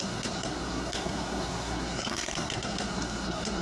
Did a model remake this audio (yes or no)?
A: yes